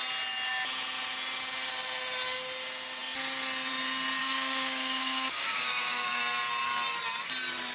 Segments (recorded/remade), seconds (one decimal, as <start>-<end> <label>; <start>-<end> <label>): 0.0-4.2 recorded; 4.2-6.2 remade; 6.2-7.7 recorded